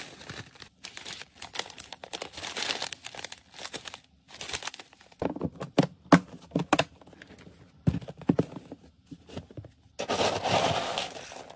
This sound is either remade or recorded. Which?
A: recorded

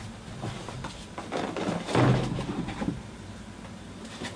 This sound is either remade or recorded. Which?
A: recorded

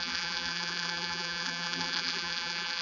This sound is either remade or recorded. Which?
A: remade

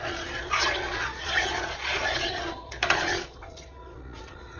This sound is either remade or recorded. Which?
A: remade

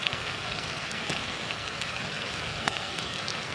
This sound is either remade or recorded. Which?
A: remade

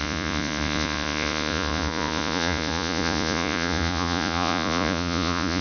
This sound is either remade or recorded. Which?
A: remade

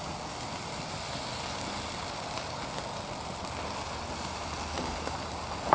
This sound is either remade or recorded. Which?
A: recorded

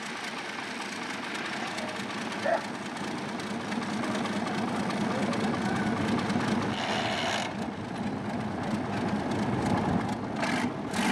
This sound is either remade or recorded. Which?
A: recorded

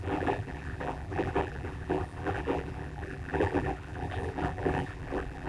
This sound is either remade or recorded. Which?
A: remade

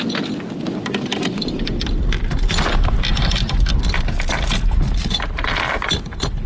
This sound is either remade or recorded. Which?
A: recorded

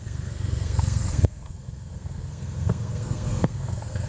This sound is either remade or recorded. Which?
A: remade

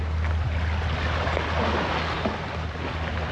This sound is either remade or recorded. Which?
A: recorded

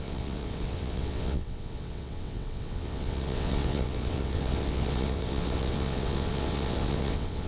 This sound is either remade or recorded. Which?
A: remade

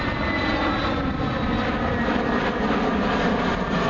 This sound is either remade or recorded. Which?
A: recorded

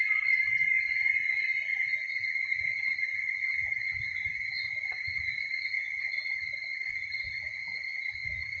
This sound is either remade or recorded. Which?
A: remade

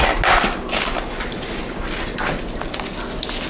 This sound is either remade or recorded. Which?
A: recorded